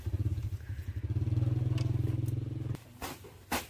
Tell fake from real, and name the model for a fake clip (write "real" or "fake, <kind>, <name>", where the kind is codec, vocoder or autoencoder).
real